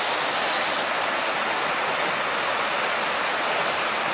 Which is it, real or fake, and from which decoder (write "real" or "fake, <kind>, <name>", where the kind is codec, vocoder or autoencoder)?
real